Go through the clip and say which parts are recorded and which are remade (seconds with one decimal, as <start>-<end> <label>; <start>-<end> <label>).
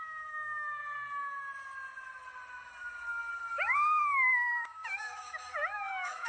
0.0-0.8 remade; 0.8-3.5 recorded; 3.5-6.3 remade